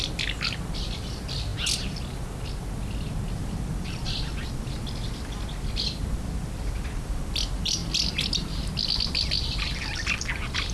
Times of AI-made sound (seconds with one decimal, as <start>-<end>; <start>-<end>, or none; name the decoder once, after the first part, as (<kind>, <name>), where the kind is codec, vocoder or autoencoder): 0.0-1.5 (vocoder, BigVGAN v2); 3.4-7.8; 9.0-10.7